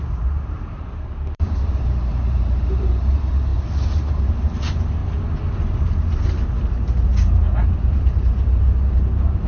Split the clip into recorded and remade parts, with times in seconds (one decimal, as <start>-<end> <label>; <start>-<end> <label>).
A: 0.0-5.0 remade; 5.0-6.7 recorded; 6.7-9.5 remade